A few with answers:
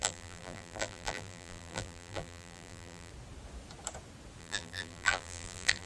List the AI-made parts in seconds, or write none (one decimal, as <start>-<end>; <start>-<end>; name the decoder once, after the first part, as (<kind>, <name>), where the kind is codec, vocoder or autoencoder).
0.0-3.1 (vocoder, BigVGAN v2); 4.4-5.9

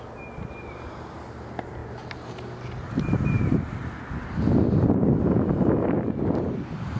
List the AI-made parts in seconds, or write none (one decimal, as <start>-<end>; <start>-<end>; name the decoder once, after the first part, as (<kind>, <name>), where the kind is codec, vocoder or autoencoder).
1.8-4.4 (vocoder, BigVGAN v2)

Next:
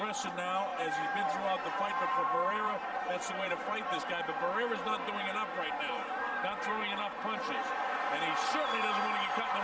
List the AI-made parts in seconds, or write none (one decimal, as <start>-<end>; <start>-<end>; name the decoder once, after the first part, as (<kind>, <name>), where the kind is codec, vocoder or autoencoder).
0.7-4.0 (vocoder, BigVGAN v2)